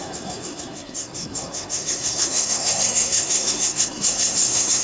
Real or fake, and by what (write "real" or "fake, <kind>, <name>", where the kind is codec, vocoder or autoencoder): fake, codec, SNAC